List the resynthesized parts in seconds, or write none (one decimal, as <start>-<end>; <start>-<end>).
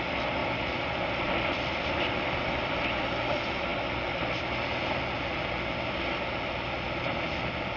0.4-3.0